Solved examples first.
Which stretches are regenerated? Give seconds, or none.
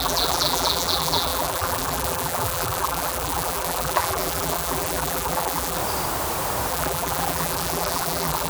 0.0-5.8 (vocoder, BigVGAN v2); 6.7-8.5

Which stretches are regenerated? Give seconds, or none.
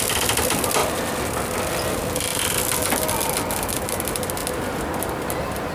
none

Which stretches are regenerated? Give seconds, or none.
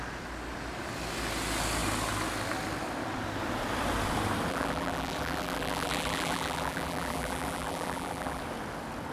4.5-8.4 (vocoder, BigVGAN v2)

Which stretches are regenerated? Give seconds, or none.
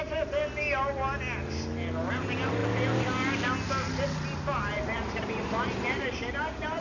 0.0-0.4 (vocoder, BigVGAN v2); 2.1-2.6; 4.6-6.8